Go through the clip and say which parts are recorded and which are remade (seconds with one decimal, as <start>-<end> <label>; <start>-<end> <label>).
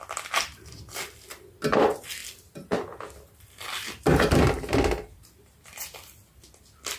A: 0.0-7.0 recorded